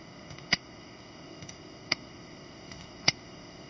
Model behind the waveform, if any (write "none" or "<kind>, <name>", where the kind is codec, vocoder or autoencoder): codec, ZipCodec